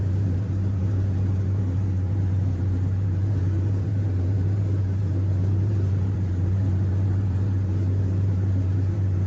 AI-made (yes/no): yes